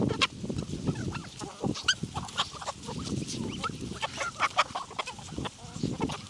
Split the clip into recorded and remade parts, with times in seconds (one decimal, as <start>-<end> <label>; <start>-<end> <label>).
0.0-6.3 recorded